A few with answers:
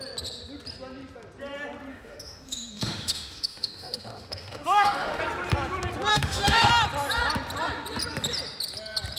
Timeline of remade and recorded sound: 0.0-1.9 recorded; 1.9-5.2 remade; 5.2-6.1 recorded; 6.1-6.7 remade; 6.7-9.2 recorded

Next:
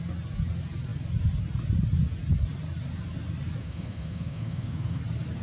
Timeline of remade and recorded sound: 0.0-3.6 recorded; 3.6-5.0 remade; 5.0-5.4 recorded